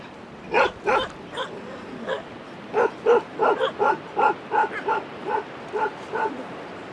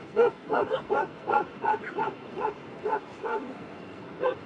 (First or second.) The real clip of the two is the first